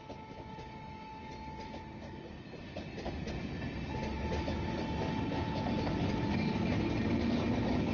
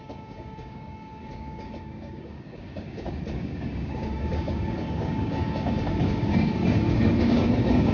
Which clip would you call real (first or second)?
first